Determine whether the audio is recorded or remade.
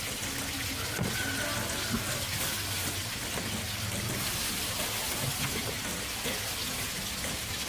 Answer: recorded